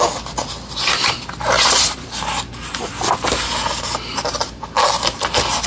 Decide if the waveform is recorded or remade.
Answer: recorded